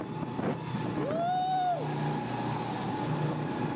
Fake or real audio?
real